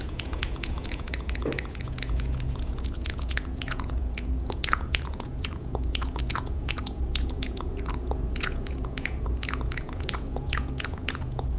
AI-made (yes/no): yes